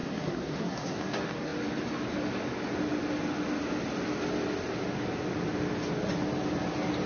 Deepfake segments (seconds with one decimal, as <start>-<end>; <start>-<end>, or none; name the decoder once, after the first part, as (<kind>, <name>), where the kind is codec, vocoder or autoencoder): 0.0-1.0 (codec, SNAC)